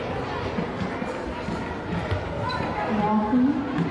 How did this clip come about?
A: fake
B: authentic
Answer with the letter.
B